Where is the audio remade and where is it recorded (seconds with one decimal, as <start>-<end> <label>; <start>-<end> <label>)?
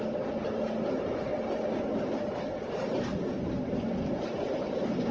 0.0-5.1 recorded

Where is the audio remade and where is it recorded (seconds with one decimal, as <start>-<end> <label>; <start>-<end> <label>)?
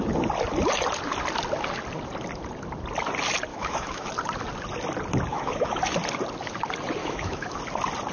0.0-3.5 recorded; 3.5-4.1 remade; 4.1-5.3 recorded; 5.3-5.8 remade; 5.8-7.0 recorded; 7.0-7.6 remade; 7.6-8.1 recorded